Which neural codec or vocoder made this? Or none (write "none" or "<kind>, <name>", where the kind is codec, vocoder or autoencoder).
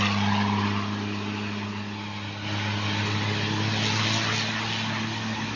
none